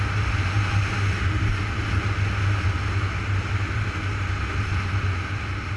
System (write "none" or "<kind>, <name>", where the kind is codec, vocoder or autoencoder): none